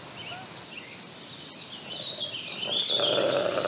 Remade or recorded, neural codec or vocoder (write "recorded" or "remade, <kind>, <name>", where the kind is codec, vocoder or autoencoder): recorded